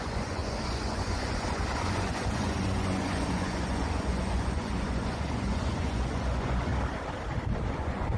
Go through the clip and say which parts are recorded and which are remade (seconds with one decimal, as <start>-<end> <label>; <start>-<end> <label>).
0.0-6.7 remade; 6.7-7.7 recorded; 7.7-8.2 remade